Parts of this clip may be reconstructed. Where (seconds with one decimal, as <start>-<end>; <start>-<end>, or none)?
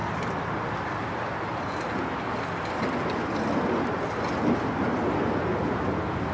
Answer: 0.0-2.0